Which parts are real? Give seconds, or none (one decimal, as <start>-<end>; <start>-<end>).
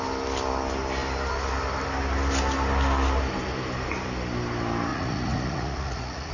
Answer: 0.0-4.9